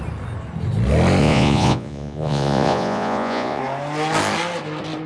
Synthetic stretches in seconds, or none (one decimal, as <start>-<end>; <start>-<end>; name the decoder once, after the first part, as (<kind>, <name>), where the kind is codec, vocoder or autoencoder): 1.2-3.6 (vocoder, Vocos)